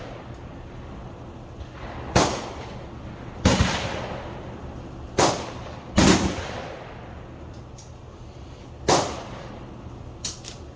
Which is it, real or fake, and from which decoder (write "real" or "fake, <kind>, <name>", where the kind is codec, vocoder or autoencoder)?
real